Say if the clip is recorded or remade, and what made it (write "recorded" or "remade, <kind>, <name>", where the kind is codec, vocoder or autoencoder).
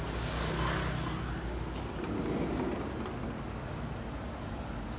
recorded